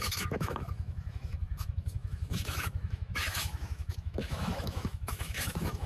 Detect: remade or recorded remade